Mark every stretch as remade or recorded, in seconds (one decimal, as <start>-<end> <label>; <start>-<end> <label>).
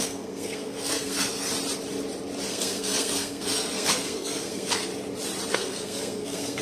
0.0-1.5 remade; 1.5-2.5 recorded; 2.5-4.9 remade; 4.9-5.5 recorded; 5.5-6.6 remade